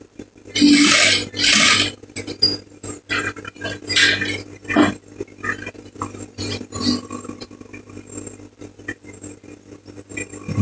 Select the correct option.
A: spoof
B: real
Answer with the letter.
B